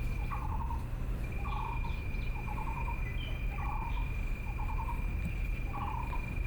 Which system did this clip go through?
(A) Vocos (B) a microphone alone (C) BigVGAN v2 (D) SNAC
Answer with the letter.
C